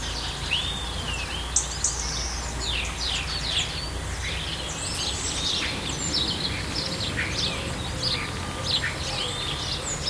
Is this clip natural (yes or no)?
yes